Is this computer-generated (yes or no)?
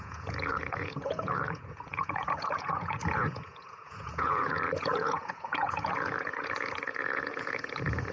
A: yes